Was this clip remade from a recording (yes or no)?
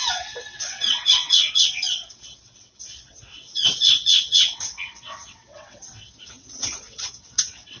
yes